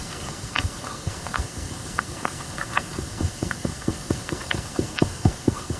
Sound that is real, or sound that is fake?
fake